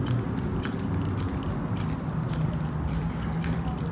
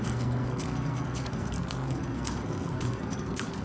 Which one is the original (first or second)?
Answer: first